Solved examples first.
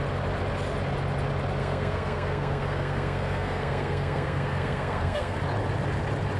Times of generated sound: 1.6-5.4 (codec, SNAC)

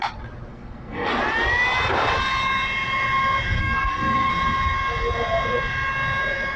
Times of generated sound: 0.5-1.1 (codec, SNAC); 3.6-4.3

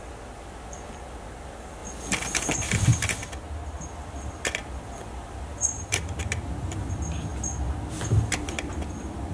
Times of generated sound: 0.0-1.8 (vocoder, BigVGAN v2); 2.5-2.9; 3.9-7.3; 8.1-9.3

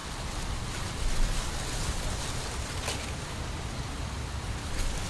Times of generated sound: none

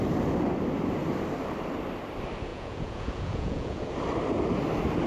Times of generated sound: 2.5-3.9 (vocoder, Vocos)

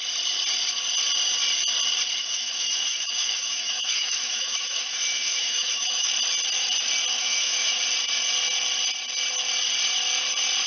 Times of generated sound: 2.2-6.1 (autoencoder, DAC-VAE); 7.1-7.8